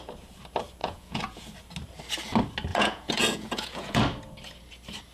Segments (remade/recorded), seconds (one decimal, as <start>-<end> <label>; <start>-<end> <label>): 0.0-0.8 recorded; 0.8-1.4 remade; 1.4-2.7 recorded; 2.7-4.0 remade; 4.0-5.1 recorded